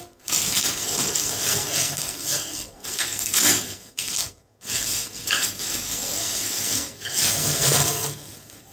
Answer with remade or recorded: remade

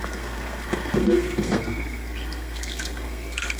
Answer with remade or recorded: remade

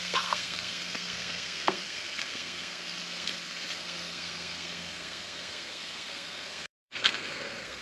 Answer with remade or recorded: remade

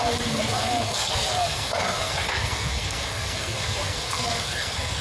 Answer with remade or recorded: remade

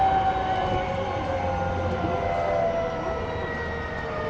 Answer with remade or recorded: recorded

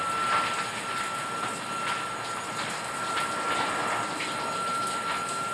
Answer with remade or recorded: recorded